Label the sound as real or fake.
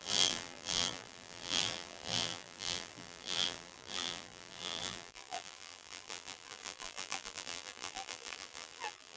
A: fake